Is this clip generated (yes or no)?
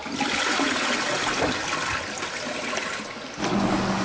no